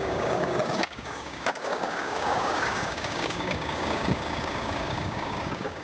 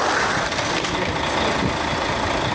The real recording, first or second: second